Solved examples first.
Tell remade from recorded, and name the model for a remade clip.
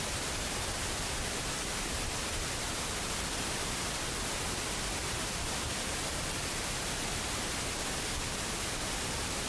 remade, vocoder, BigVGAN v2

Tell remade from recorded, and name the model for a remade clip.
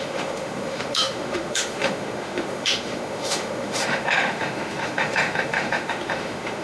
remade, autoencoder, DAC-VAE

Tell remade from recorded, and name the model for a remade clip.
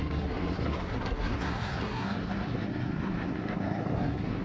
remade, codec, SNAC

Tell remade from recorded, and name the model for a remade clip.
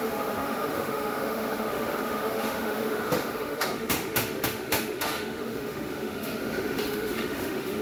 remade, autoencoder, DAC-VAE